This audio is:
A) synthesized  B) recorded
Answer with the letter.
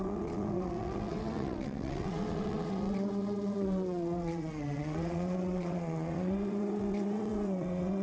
A